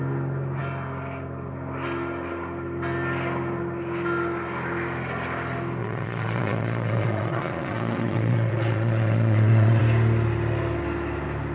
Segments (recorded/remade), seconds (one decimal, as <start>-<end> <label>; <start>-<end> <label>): 0.0-5.8 recorded; 5.8-9.8 remade; 9.8-11.5 recorded